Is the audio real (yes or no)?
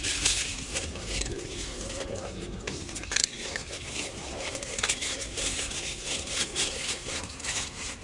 no